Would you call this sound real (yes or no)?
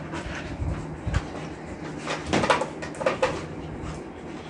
yes